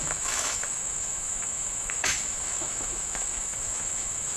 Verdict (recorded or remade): remade